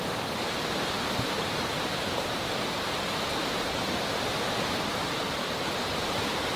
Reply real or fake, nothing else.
fake